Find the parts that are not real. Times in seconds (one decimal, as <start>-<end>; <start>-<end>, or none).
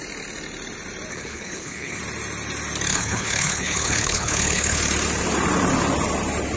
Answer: 1.1-2.0; 2.9-4.8